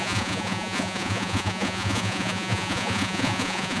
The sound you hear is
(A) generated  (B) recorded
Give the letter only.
A